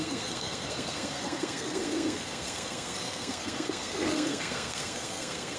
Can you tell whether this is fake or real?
fake